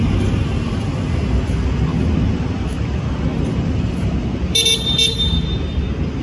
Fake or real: real